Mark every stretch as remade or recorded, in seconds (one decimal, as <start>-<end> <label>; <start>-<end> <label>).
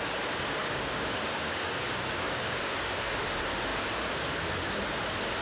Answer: 0.0-0.6 recorded; 0.6-3.2 remade; 3.2-5.4 recorded